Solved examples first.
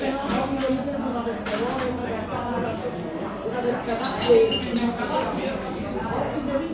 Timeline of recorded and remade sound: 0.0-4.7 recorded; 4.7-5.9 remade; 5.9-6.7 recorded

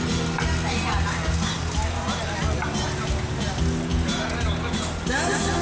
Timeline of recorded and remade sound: 0.0-5.6 recorded

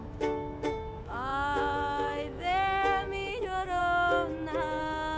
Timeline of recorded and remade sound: 0.0-3.8 remade; 3.8-4.8 recorded; 4.8-5.2 remade